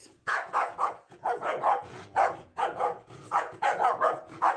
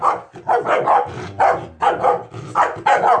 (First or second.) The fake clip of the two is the first